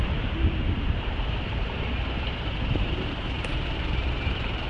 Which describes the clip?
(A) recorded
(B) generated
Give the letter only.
B